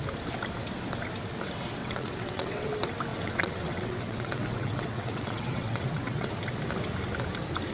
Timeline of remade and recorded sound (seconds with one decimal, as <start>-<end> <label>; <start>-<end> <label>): 0.0-1.8 recorded; 1.8-2.7 remade; 2.7-3.1 recorded; 3.1-6.3 remade; 6.3-7.7 recorded